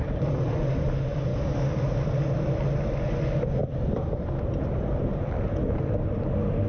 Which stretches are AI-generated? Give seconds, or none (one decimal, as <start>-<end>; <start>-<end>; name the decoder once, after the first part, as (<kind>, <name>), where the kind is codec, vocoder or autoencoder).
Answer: none

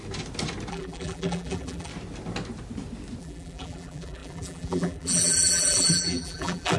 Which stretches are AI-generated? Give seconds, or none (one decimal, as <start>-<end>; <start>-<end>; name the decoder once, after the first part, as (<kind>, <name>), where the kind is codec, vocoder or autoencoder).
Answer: 0.7-1.9 (vocoder, BigVGAN v2); 3.2-6.8

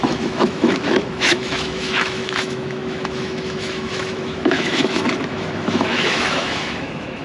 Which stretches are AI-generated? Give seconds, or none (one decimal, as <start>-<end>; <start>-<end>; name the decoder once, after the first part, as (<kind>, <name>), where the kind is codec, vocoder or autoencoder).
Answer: 0.0-7.2 (autoencoder, DAC-VAE)

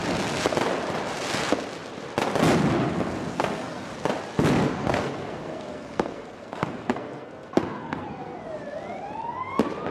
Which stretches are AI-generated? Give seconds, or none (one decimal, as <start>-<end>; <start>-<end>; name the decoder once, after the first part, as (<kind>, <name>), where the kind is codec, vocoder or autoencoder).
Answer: 3.3-3.9 (codec, SNAC); 4.6-8.4